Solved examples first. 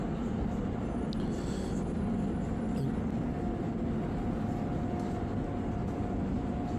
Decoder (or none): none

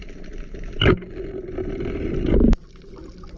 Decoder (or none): none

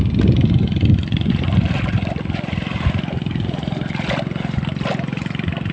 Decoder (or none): none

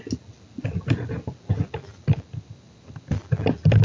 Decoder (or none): none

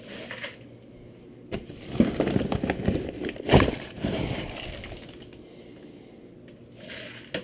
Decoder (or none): none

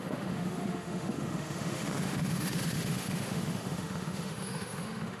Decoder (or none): autoencoder, DAC-VAE